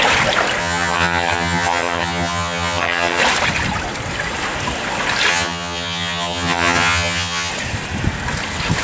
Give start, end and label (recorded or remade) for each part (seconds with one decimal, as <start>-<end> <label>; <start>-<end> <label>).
0.0-0.6 recorded; 0.6-3.2 remade; 3.2-5.3 recorded; 5.3-7.5 remade; 7.5-8.8 recorded